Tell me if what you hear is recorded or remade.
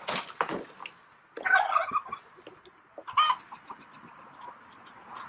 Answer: recorded